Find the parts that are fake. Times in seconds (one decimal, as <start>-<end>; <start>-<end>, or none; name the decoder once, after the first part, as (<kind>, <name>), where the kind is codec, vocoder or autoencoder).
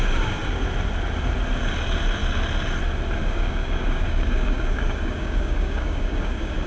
3.2-6.7 (codec, DAC)